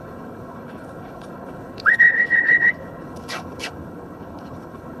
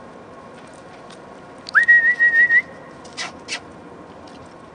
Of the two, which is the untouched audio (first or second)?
second